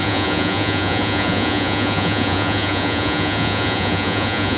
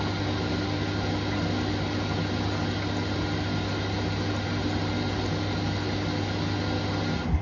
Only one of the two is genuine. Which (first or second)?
second